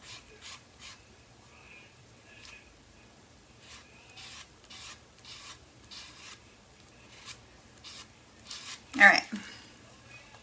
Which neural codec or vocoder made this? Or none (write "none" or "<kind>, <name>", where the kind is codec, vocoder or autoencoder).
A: vocoder, BigVGAN v2